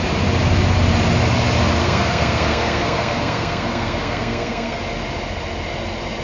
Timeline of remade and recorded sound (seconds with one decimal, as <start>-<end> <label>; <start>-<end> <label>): 0.0-1.8 recorded; 1.8-4.8 remade; 4.8-6.2 recorded